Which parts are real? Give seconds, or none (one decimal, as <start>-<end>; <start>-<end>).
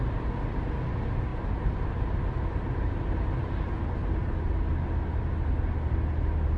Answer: 0.0-6.6